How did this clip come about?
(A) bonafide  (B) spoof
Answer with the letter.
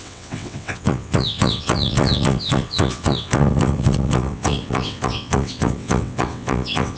B